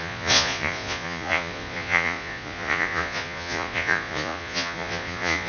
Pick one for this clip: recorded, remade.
remade